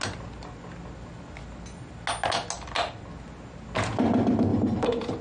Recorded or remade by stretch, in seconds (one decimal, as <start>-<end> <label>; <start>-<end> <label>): 0.0-4.5 recorded; 4.5-5.2 remade